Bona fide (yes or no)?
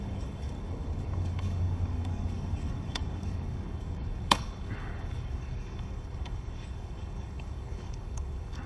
no